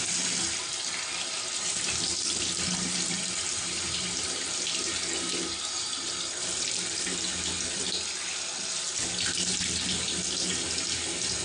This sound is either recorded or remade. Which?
recorded